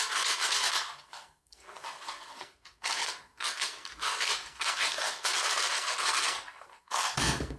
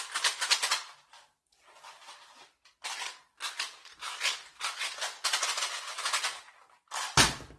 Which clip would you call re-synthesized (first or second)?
first